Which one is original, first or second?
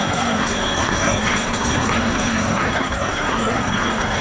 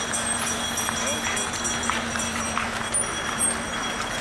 second